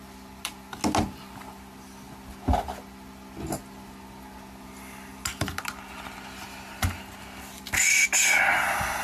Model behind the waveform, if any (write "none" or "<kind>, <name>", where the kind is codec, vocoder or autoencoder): none